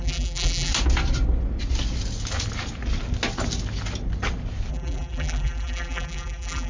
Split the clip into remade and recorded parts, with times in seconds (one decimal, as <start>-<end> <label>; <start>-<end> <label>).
0.0-0.7 remade; 0.7-4.7 recorded; 4.7-6.7 remade